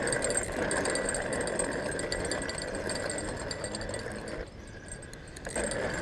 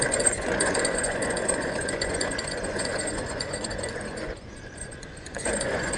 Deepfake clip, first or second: second